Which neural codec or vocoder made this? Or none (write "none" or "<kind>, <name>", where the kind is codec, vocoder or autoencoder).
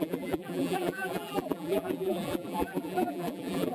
vocoder, BigVGAN v2